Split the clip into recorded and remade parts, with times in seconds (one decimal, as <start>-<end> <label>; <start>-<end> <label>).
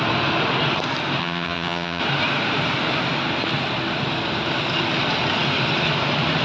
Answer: 0.0-1.2 recorded; 1.2-2.0 remade; 2.0-6.4 recorded